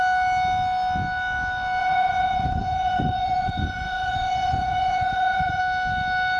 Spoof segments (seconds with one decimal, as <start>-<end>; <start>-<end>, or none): 1.8-5.6